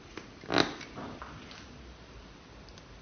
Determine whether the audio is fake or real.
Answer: real